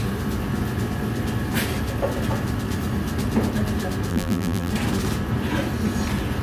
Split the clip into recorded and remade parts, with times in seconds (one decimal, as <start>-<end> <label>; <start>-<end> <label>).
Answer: 0.0-4.1 recorded; 4.1-4.7 remade; 4.7-6.4 recorded